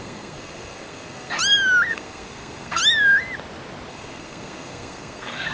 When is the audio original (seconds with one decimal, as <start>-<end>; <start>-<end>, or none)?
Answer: 1.4-1.9; 2.8-3.9